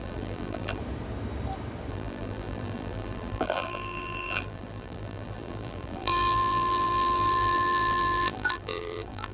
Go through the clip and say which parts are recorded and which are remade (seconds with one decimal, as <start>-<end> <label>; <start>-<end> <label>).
0.0-0.8 remade; 0.8-1.9 recorded; 1.9-9.3 remade